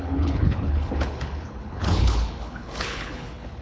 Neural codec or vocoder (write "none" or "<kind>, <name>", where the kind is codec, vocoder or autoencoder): codec, HILCodec